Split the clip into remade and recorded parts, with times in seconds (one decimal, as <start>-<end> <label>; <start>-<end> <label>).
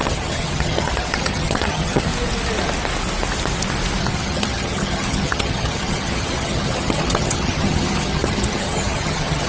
0.0-2.1 remade; 2.1-4.0 recorded; 4.0-9.5 remade